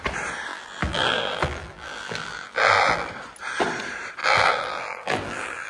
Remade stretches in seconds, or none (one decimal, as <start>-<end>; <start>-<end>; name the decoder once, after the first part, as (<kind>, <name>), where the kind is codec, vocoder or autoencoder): 0.5-3.1 (vocoder, BigVGAN v2); 4.2-5.7